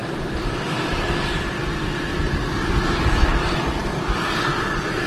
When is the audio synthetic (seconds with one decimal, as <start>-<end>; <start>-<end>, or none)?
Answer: 0.0-0.9; 2.1-3.2